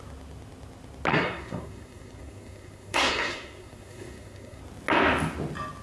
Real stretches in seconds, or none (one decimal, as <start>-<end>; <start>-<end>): 0.0-1.1; 4.6-5.8